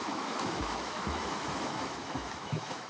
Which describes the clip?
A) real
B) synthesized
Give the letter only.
B